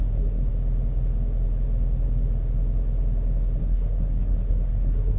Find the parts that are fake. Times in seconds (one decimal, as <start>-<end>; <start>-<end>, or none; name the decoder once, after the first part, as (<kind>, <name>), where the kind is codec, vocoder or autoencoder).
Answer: 0.0-0.5 (codec, SNAC); 3.6-5.2